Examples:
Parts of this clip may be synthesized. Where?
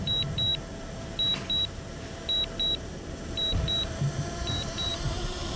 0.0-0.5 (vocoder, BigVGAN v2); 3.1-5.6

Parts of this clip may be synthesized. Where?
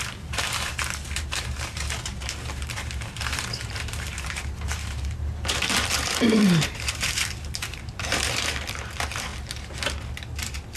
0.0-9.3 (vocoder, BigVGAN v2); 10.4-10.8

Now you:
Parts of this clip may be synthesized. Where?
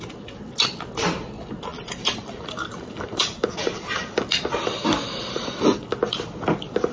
1.7-4.4 (vocoder, BigVGAN v2)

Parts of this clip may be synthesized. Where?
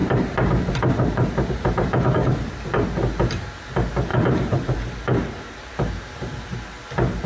0.0-1.9 (vocoder, BigVGAN v2); 4.1-5.9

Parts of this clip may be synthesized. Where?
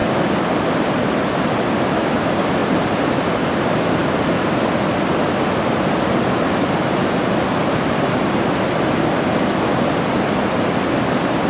1.7-2.6 (vocoder, BigVGAN v2); 3.5-11.5